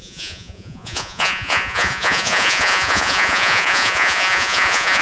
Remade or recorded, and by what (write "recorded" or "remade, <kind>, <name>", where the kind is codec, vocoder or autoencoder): remade, vocoder, Vocos